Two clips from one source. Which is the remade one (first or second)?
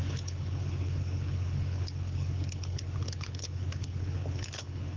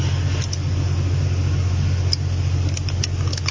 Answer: first